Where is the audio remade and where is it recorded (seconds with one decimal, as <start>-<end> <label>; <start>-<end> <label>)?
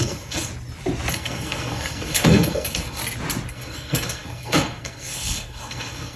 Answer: 0.0-0.5 remade; 0.5-1.1 recorded; 1.1-3.0 remade; 3.0-3.5 recorded; 3.5-6.2 remade